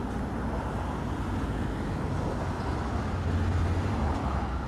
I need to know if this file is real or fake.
real